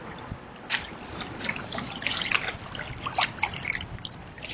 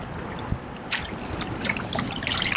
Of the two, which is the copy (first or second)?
second